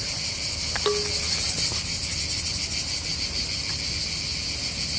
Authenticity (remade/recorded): recorded